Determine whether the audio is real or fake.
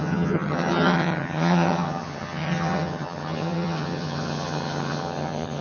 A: fake